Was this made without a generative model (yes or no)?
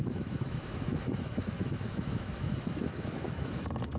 no